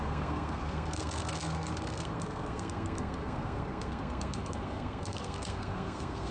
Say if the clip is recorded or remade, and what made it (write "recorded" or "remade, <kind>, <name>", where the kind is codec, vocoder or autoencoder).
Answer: remade, codec, SNAC